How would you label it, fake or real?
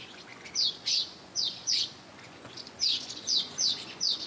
fake